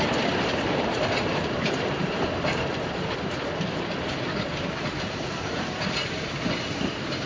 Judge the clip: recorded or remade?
remade